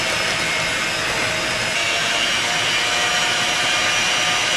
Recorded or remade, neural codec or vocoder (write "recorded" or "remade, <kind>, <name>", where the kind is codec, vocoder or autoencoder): recorded